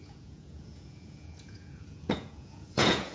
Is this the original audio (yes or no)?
no